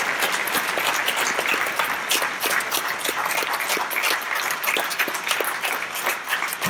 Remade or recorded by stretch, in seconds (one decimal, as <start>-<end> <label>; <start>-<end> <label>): 0.0-6.7 recorded